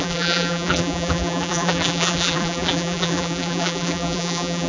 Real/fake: fake